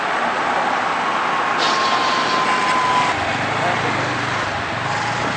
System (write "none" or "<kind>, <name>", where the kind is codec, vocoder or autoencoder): none